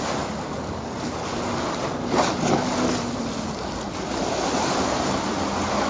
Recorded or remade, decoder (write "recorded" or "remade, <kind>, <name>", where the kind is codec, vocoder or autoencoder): recorded